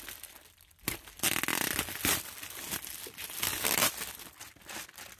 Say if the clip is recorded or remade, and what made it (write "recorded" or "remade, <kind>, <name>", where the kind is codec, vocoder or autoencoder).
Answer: recorded